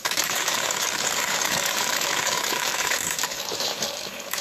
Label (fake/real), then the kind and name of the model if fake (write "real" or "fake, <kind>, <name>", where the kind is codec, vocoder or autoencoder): fake, codec, DAC